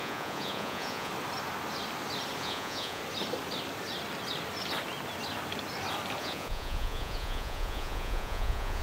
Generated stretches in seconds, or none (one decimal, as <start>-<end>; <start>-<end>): 0.0-1.1; 2.4-3.0; 6.2-8.8